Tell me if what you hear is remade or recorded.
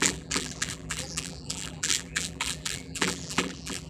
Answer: remade